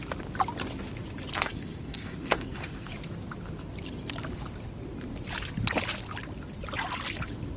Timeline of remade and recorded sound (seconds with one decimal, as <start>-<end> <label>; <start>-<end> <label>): 0.0-1.3 recorded; 1.3-2.9 remade; 2.9-7.6 recorded